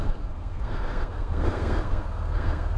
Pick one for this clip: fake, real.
fake